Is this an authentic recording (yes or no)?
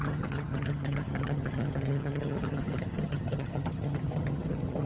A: no